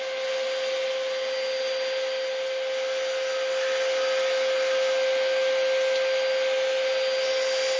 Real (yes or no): yes